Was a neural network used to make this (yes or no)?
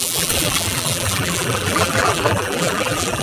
yes